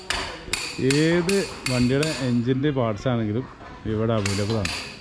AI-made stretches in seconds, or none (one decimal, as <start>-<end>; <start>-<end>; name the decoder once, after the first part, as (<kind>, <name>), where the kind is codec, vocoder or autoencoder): none